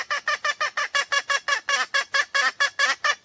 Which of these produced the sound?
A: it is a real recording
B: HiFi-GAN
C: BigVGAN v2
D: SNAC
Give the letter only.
A